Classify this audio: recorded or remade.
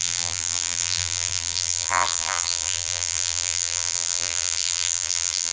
remade